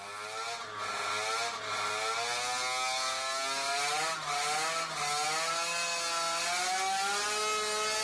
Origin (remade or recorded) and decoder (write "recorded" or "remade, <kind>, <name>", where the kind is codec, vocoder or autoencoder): recorded